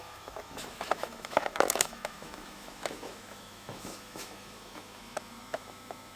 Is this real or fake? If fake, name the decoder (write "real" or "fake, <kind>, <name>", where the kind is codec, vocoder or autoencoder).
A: fake, autoencoder, DAC-VAE